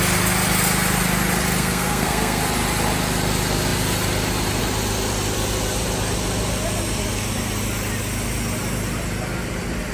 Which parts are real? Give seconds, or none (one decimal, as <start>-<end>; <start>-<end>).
0.0-1.6; 2.4-9.9